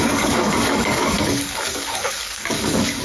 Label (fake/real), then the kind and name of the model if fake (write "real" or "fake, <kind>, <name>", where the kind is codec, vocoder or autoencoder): fake, codec, DAC